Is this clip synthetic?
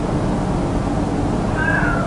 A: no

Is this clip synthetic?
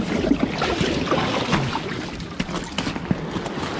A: no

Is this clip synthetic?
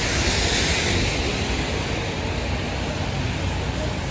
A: no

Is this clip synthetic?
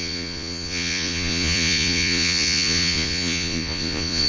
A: yes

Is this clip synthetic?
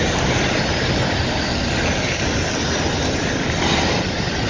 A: no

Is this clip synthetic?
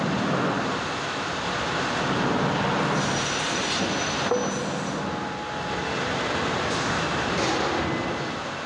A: no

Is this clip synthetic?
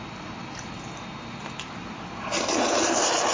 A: no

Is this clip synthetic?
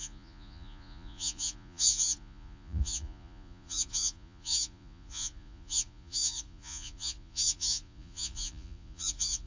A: yes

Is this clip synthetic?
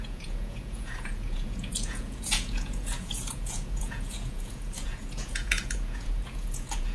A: yes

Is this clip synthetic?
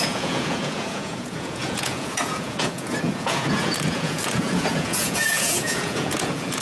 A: yes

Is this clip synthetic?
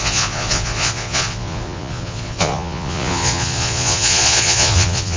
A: yes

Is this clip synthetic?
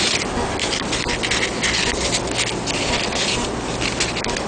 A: no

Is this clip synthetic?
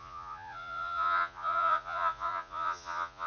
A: yes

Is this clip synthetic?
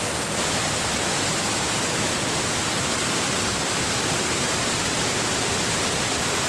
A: no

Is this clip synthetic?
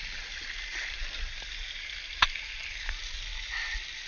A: no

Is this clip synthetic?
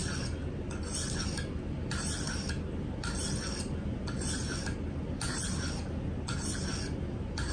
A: no